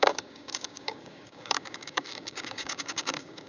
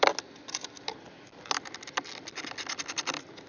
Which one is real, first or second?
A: second